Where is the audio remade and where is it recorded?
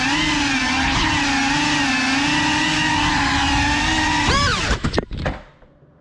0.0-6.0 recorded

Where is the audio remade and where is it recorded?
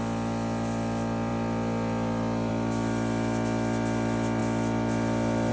0.0-5.5 recorded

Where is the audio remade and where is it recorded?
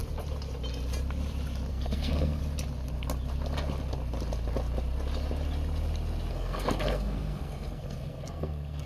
0.0-1.7 recorded; 1.7-2.4 remade; 2.4-6.3 recorded; 6.3-8.9 remade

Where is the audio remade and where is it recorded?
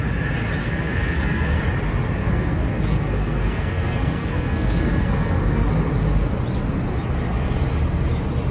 0.0-0.6 recorded; 0.6-1.6 remade; 1.6-2.2 recorded; 2.2-5.7 remade; 5.7-8.5 recorded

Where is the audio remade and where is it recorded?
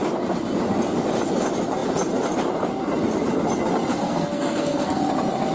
0.0-3.9 recorded; 3.9-5.0 remade; 5.0-5.5 recorded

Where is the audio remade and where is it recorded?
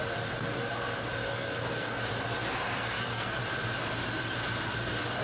0.0-1.2 recorded; 1.2-2.0 remade; 2.0-2.8 recorded; 2.8-3.4 remade; 3.4-5.2 recorded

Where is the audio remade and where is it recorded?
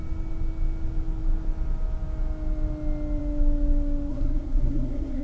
0.0-4.1 recorded; 4.1-5.2 remade